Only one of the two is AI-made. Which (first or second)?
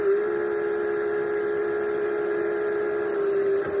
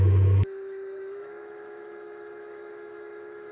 second